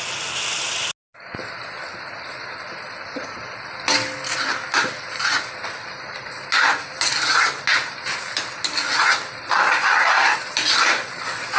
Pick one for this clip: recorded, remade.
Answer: recorded